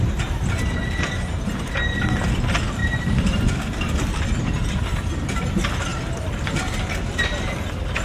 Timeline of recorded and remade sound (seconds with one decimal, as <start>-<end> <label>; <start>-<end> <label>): 0.0-2.8 recorded; 2.8-5.4 remade; 5.4-5.9 recorded; 5.9-6.5 remade; 6.5-8.0 recorded